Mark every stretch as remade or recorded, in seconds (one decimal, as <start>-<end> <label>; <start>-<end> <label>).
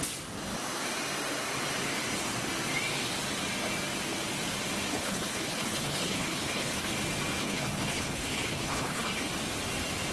0.0-4.9 recorded; 4.9-6.9 remade; 6.9-7.4 recorded; 7.4-9.3 remade; 9.3-10.1 recorded